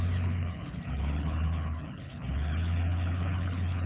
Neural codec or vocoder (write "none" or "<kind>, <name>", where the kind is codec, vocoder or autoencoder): codec, HILCodec